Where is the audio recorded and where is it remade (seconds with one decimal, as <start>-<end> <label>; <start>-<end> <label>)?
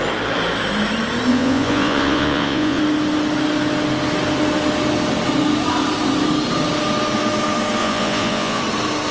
0.0-1.3 recorded; 1.3-2.8 remade; 2.8-7.8 recorded; 7.8-8.6 remade; 8.6-9.1 recorded